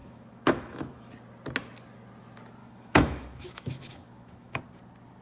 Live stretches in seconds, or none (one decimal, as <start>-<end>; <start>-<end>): 1.1-2.6; 4.6-5.2